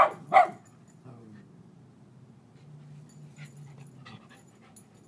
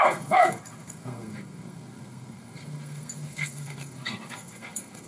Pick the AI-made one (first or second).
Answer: second